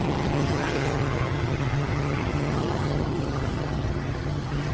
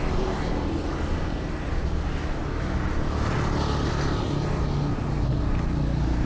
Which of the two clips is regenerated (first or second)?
first